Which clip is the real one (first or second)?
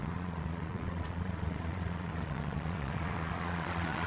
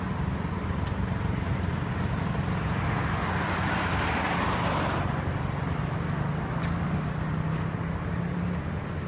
second